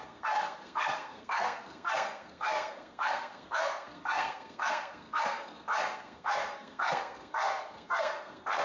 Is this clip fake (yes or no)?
yes